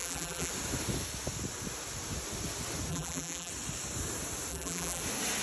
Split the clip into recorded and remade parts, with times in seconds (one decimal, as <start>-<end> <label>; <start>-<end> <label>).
0.0-0.5 remade; 0.5-2.9 recorded; 2.9-3.5 remade; 3.5-4.5 recorded; 4.5-5.0 remade; 5.0-5.4 recorded